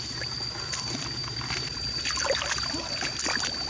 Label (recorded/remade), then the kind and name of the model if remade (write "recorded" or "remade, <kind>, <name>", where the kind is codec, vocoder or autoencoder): remade, vocoder, BigVGAN v2